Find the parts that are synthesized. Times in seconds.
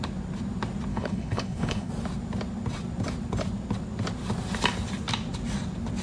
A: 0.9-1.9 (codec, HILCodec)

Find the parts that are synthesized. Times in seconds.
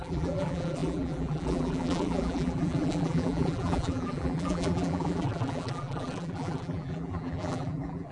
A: 0.0-8.1 (vocoder, BigVGAN v2)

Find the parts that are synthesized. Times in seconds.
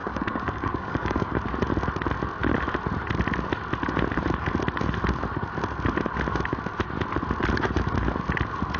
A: 0.0-1.4 (codec, DAC)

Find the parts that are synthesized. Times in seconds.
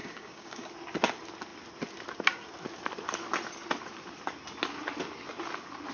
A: 0.0-0.7 (codec, DAC)